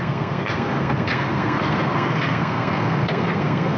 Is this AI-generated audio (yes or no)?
yes